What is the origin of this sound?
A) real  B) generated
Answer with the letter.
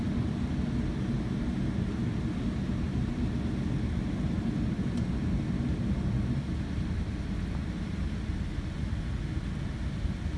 A